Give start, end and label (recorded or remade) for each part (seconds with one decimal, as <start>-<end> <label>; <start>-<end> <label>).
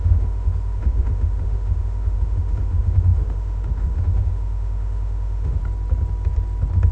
0.0-5.6 remade; 5.6-6.9 recorded